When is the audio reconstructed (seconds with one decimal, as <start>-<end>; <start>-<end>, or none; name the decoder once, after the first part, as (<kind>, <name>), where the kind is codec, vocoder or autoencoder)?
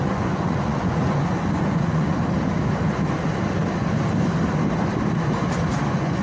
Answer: 0.0-2.2 (vocoder, Vocos); 5.8-6.2